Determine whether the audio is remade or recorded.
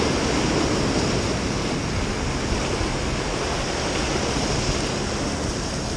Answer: recorded